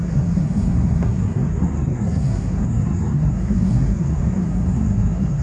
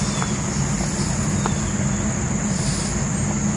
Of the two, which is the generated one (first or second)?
first